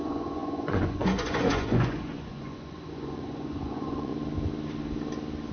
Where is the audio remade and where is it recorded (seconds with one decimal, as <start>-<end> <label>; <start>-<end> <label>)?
0.0-4.1 remade; 4.1-5.5 recorded